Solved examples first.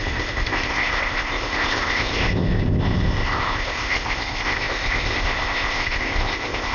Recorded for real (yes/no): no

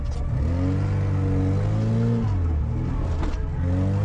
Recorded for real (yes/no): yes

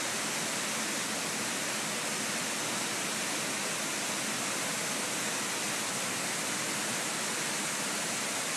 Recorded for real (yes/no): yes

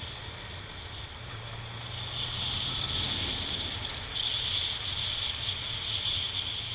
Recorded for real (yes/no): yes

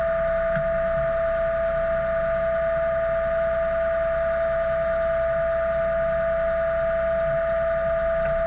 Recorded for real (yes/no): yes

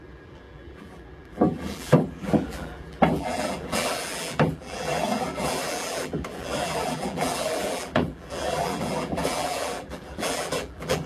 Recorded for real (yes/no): no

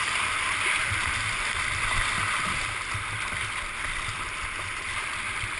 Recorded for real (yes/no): yes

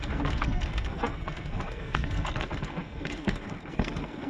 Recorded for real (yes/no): no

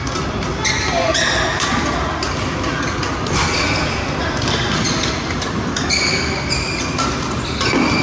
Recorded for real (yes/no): yes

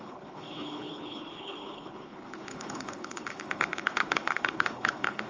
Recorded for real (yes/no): no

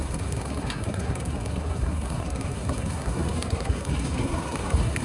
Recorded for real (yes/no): no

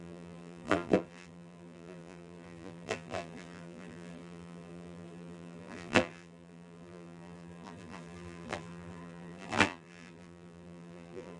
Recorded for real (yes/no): no